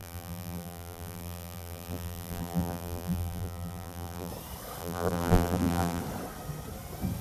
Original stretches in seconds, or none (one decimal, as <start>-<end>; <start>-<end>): 4.3-4.8; 6.0-7.2

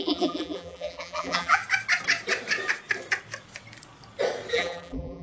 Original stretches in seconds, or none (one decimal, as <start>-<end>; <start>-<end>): 1.6-4.5

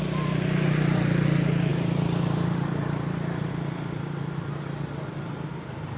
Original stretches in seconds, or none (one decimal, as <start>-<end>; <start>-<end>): 0.0-1.7; 3.5-6.0

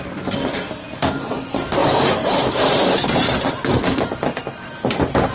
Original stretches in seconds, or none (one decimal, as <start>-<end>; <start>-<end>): 0.0-1.8; 3.5-5.3

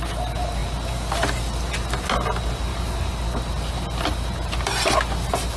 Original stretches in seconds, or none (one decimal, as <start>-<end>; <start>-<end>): 0.0-5.6

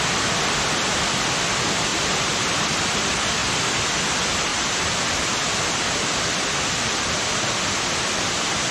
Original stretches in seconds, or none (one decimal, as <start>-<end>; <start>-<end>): 0.0-1.9; 2.6-4.5; 7.6-8.7

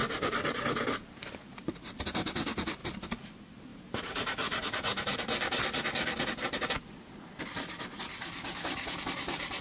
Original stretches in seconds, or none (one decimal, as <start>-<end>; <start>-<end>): 1.6-3.7; 5.6-9.6